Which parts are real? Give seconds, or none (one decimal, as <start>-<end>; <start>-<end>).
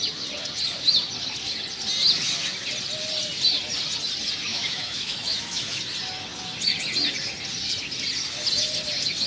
0.0-4.5; 5.8-9.3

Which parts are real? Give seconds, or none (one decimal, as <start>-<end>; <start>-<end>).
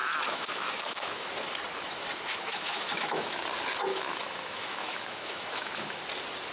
1.3-2.3; 3.4-3.9; 6.0-6.5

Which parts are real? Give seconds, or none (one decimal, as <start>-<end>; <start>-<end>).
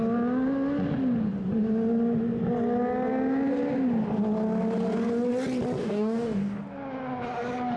0.0-5.8; 6.6-7.8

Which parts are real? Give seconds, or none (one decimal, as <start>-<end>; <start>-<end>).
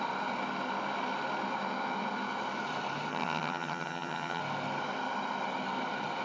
0.0-3.1; 4.4-6.2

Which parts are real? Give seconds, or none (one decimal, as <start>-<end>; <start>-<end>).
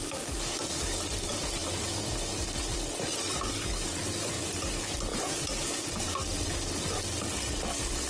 0.0-5.1; 5.8-8.1